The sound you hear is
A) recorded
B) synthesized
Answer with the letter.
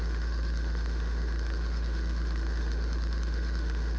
B